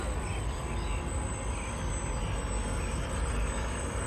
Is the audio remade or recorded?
recorded